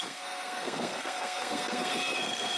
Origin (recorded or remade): remade